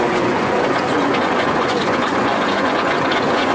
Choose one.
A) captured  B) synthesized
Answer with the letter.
B